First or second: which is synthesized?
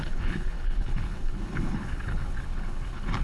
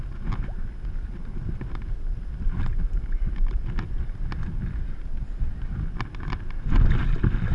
first